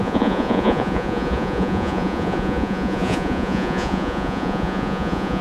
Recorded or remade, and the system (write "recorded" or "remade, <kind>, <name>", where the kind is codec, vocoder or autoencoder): remade, vocoder, Vocos